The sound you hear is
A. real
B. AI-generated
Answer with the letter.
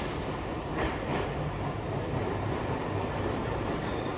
B